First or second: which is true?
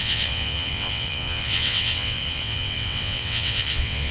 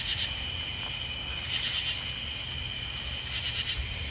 second